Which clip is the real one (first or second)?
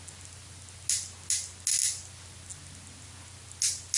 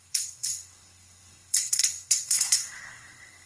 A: first